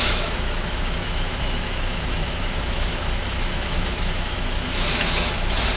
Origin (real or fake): fake